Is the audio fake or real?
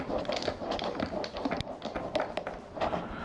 real